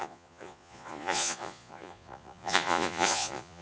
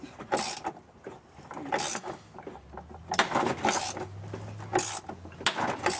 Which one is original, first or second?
second